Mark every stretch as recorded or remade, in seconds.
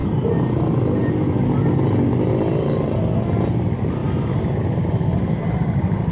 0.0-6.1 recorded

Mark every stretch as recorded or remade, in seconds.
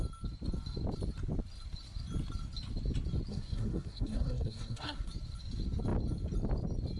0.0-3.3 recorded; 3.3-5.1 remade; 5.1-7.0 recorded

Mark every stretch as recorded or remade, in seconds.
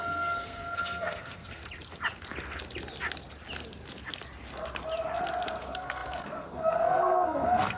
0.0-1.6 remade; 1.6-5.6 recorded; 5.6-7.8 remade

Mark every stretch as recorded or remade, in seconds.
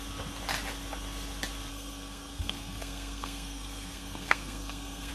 0.0-1.7 recorded; 1.7-5.1 remade